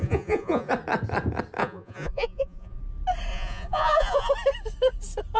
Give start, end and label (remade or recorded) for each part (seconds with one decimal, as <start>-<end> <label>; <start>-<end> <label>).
0.0-0.7 remade; 0.7-1.6 recorded; 1.6-2.8 remade; 2.8-3.3 recorded; 3.3-4.3 remade; 4.3-5.4 recorded